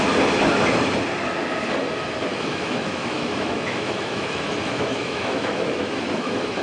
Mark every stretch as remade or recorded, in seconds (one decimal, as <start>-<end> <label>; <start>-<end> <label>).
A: 0.0-2.3 recorded; 2.3-6.6 remade